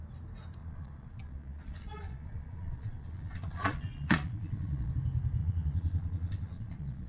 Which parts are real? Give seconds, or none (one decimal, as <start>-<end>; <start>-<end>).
0.0-0.6; 4.9-5.4